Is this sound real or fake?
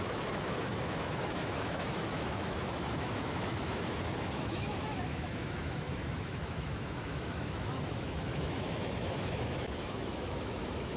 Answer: fake